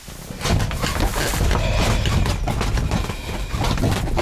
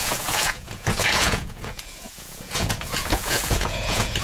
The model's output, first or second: second